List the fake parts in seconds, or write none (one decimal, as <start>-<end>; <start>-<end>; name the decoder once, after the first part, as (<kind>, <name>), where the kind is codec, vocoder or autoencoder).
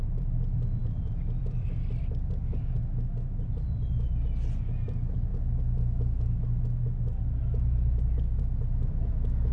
0.0-2.8 (vocoder, BigVGAN v2); 3.4-5.3; 8.0-9.5